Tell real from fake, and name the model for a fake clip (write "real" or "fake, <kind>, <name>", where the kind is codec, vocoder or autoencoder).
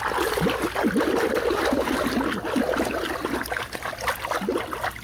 real